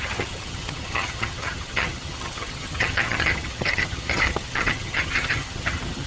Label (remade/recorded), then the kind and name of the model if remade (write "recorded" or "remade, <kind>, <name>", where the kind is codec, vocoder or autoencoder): remade, vocoder, HiFi-GAN